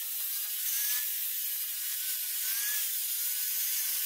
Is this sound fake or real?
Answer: fake